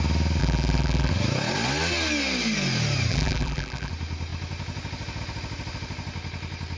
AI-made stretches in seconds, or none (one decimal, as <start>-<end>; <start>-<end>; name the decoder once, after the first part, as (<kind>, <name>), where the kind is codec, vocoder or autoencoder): 0.4-1.1 (vocoder, BigVGAN v2); 3.1-3.9